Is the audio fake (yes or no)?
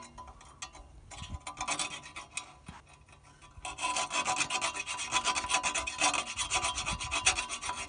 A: no